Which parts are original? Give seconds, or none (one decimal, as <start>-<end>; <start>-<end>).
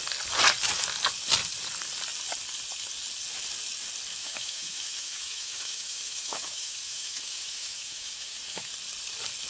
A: 0.0-4.2; 8.7-9.5